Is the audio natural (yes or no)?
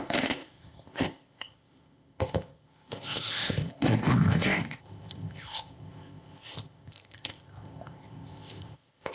no